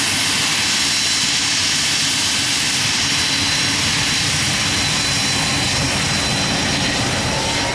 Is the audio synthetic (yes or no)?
no